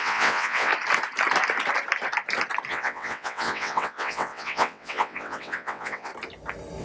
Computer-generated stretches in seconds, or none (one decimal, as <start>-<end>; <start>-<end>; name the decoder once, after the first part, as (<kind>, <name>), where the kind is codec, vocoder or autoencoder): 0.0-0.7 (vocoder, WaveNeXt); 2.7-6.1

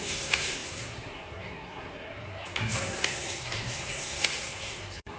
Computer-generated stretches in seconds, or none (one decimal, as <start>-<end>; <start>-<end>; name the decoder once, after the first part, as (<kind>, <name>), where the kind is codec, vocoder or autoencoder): 0.0-5.2 (codec, SNAC)

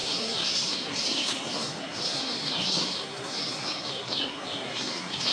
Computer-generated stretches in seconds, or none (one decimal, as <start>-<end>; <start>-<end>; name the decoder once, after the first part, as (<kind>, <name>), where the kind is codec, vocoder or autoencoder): 0.0-5.3 (codec, SNAC)

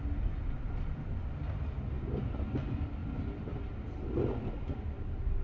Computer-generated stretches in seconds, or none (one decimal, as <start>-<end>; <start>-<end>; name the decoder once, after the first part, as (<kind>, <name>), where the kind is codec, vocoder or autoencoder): none

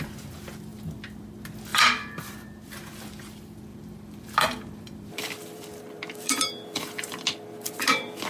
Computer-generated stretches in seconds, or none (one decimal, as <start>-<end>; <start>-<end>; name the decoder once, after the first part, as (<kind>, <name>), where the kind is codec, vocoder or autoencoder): 1.7-3.2 (vocoder, BigVGAN v2); 3.7-8.3

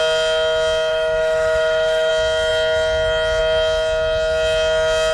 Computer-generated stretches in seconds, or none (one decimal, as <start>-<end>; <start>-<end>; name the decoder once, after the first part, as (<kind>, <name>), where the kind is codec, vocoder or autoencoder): 0.9-2.1 (autoencoder, DAC-VAE)

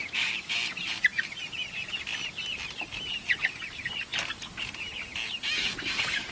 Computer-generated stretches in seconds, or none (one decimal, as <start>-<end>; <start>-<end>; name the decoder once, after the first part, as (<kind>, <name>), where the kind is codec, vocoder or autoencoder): none